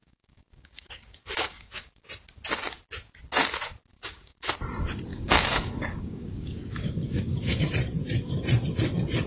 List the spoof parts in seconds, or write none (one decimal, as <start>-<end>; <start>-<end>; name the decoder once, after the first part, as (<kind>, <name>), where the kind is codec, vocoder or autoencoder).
0.0-2.0 (codec, DAC); 3.9-4.5; 5.1-7.7